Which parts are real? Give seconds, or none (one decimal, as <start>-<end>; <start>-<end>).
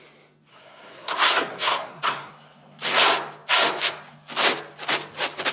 0.0-0.5; 2.3-5.5